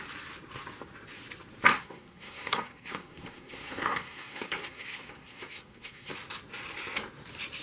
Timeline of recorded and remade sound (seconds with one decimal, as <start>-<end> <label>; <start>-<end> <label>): 0.0-1.7 recorded; 1.7-6.1 remade; 6.1-7.6 recorded